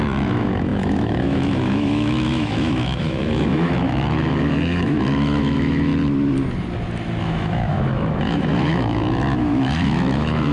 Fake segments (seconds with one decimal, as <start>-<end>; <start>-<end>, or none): 0.0-5.9; 7.2-10.5